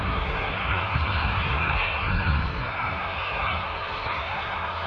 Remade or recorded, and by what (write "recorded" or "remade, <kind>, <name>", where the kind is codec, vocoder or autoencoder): remade, codec, SNAC